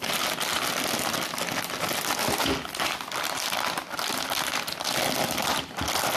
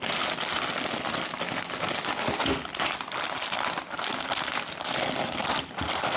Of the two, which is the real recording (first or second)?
first